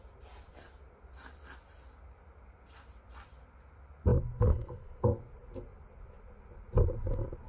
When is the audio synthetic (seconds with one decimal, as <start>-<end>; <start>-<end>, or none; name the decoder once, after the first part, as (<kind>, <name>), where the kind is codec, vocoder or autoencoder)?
none